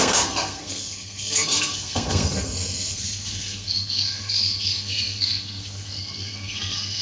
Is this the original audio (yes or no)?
no